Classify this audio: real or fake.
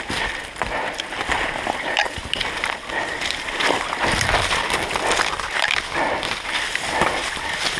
fake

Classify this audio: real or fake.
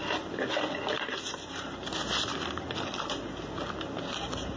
real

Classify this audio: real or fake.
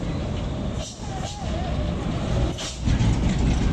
real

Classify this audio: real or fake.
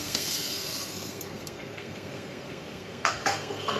fake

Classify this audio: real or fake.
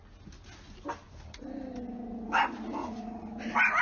real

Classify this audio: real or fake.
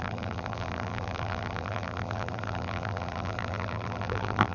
fake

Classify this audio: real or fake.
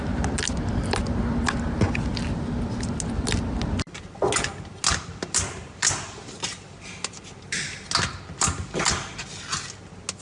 real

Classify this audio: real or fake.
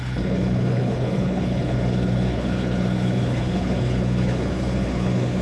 fake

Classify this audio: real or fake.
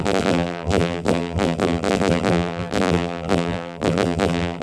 fake